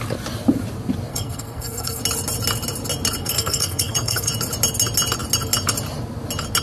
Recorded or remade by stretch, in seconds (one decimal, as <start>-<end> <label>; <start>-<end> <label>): 0.0-1.1 recorded; 1.1-2.0 remade; 2.0-3.2 recorded; 3.2-4.3 remade; 4.3-6.6 recorded